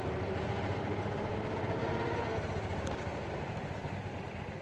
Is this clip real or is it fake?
real